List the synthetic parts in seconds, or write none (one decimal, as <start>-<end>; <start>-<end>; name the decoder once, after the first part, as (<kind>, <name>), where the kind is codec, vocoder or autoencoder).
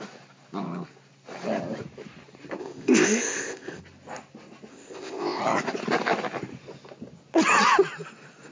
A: 2.6-3.8 (codec, ZipCodec); 4.7-5.4